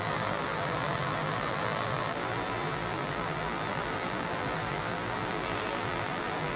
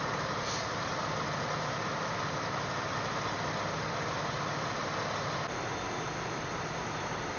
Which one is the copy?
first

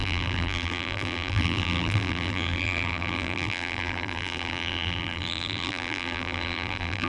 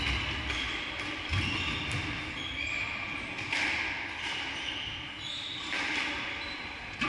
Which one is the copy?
first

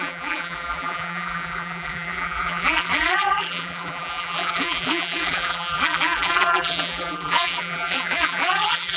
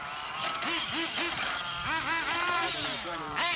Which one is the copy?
first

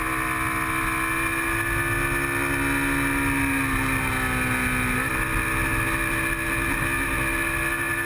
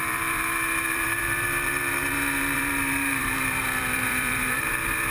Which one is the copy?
second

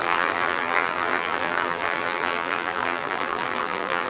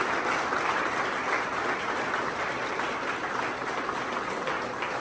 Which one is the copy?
first